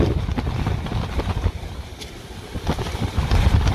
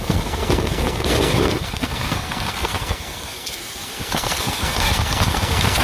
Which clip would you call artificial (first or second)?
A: second